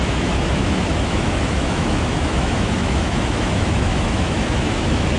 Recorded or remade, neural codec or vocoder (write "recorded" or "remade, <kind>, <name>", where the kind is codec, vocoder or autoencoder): remade, autoencoder, DAC-VAE